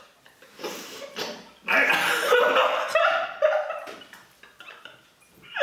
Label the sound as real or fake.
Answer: real